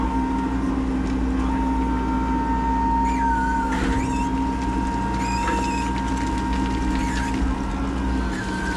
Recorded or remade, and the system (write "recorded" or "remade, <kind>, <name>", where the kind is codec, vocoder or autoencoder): recorded